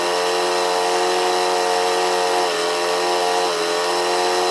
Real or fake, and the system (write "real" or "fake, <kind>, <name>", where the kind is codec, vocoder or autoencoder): real